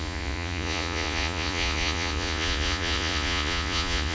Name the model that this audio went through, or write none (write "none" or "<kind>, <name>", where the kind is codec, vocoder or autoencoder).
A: vocoder, Vocos